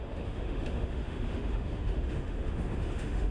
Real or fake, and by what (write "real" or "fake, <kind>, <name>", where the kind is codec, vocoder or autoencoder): fake, autoencoder, DAC-VAE